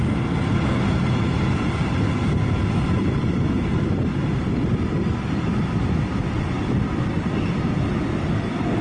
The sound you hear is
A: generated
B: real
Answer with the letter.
B